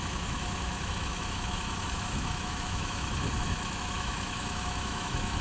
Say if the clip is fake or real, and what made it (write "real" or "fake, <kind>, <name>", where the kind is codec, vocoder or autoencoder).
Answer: fake, autoencoder, DAC-VAE